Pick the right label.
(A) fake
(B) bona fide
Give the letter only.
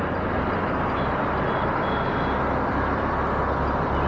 B